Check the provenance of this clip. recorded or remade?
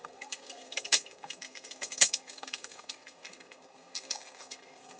remade